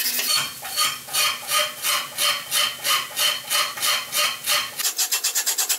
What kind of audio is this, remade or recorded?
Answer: recorded